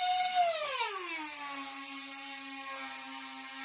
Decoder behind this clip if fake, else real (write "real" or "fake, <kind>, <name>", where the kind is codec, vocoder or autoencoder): real